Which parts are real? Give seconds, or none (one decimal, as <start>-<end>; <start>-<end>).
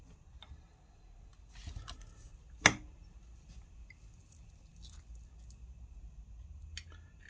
0.0-7.3